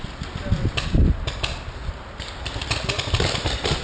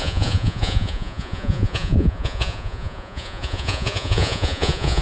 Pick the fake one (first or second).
second